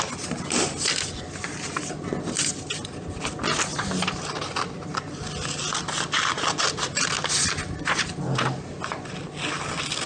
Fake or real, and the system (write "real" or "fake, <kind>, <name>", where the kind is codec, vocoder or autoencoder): real